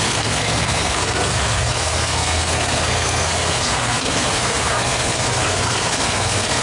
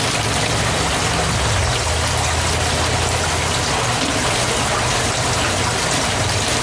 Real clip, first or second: second